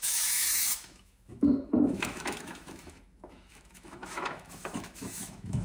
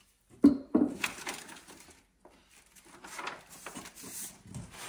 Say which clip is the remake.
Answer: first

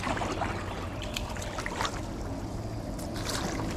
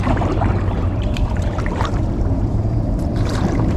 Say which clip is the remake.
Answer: second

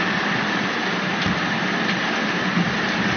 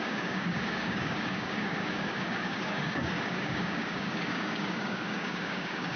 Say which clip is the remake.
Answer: second